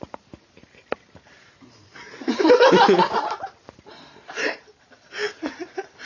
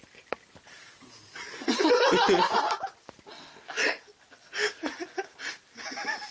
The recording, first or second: second